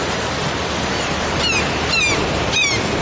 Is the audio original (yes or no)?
yes